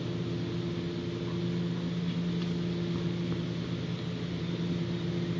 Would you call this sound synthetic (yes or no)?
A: no